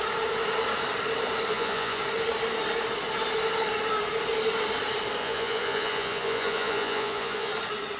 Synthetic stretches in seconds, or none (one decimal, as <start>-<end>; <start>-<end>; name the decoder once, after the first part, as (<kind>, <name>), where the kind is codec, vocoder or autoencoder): 1.5-2.0 (vocoder, Vocos); 5.2-7.5